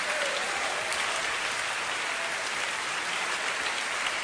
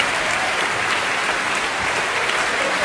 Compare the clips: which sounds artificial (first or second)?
second